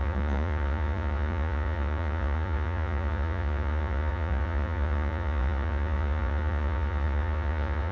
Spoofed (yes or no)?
yes